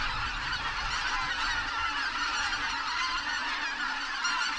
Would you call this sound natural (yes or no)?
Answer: yes